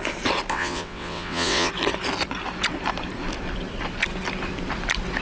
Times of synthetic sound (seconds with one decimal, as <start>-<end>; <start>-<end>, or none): 0.5-1.7